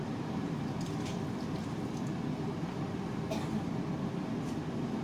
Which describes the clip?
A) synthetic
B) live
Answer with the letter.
A